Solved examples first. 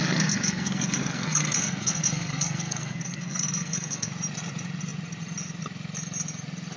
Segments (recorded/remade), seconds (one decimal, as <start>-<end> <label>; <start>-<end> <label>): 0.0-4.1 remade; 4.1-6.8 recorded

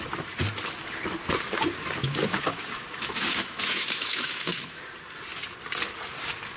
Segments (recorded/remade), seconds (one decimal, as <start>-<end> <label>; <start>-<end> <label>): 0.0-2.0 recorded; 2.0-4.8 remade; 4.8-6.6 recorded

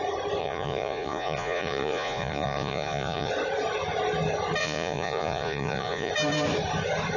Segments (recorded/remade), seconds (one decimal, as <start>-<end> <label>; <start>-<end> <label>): 0.0-0.4 recorded; 0.4-3.3 remade; 3.3-4.6 recorded; 4.6-6.1 remade; 6.1-7.2 recorded